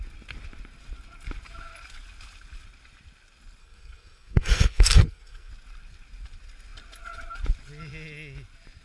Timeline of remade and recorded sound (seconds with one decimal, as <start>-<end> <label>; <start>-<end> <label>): 0.0-3.6 recorded; 3.6-5.5 remade; 5.5-8.8 recorded